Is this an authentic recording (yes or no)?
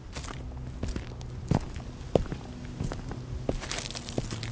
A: yes